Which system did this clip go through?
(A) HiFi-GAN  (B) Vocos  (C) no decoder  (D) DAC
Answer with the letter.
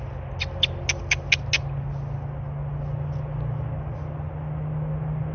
C